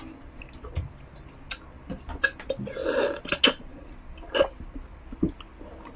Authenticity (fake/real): real